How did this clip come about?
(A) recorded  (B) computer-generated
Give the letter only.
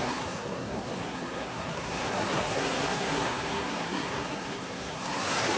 B